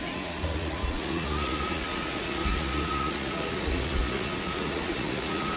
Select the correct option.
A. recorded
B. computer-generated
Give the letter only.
B